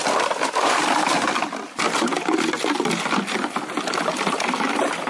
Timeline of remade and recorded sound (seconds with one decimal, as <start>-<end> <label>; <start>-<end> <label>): 0.0-5.1 recorded